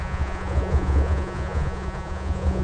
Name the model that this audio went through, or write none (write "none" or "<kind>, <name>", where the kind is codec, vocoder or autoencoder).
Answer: vocoder, Vocos